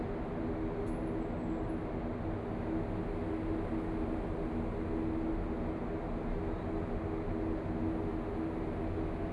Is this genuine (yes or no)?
yes